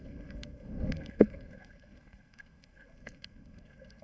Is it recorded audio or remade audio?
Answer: remade